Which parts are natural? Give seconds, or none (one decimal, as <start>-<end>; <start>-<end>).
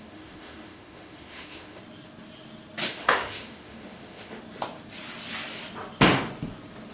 1.8-2.9; 4.4-6.9